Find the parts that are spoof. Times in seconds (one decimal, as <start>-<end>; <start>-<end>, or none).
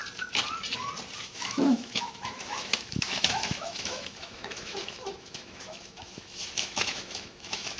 1.2-7.8